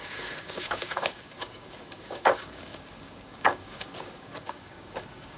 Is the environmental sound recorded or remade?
remade